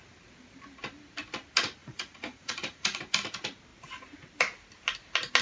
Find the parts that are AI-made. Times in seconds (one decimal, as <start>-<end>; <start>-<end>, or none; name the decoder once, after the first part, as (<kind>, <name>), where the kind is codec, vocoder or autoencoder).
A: 1.8-3.0 (vocoder, Vocos)